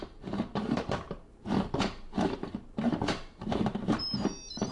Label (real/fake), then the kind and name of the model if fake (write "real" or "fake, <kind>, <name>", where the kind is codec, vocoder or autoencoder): fake, vocoder, BigVGAN v2